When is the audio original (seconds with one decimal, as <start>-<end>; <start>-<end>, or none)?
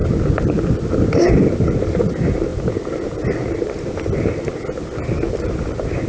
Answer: 0.0-0.7; 2.5-5.3